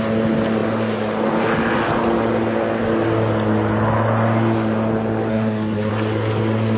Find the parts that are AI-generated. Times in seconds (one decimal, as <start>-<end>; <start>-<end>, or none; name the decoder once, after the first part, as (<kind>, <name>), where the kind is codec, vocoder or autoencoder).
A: 5.3-5.9 (codec, SNAC)